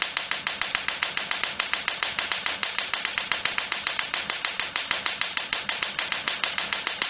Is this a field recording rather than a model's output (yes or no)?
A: yes